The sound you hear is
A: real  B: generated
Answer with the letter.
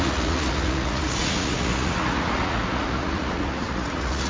B